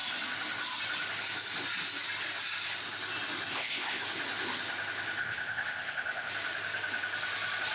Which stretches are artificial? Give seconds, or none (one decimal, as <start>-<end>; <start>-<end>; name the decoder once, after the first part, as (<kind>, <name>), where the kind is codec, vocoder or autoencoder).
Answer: 3.5-4.0 (codec, ZipCodec); 5.2-6.3

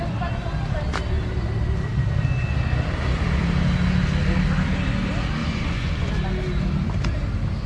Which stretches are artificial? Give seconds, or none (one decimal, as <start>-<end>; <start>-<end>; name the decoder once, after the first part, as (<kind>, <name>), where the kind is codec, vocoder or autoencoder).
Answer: 5.4-6.1 (vocoder, Vocos)